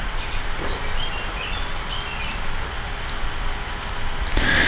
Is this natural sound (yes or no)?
yes